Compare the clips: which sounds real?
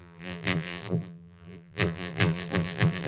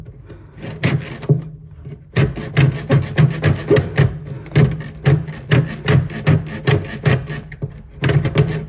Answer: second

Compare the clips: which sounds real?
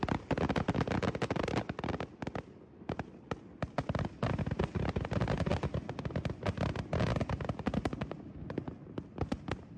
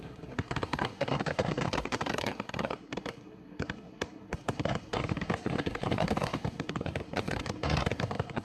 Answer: first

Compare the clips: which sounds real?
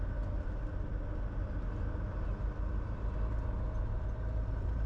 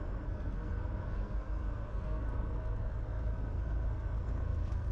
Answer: first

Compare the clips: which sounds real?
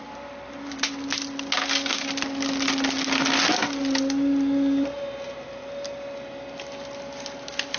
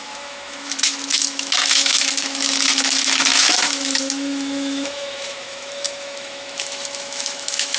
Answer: first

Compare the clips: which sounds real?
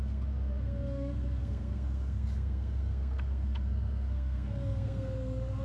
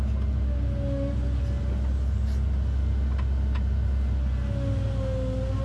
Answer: second